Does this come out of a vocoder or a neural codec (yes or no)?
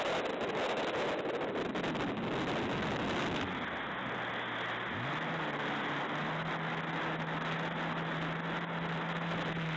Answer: no